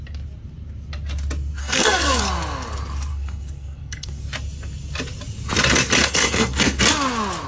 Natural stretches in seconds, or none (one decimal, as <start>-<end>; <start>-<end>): 0.0-1.6; 2.2-3.1; 4.2-6.0; 6.8-7.5